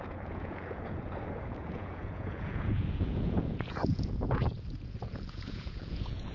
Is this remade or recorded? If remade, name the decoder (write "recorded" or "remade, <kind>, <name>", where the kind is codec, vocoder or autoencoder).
remade, vocoder, Vocos